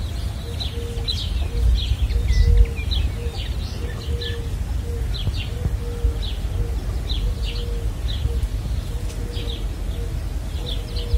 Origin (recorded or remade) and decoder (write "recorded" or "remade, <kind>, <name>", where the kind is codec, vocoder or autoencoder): recorded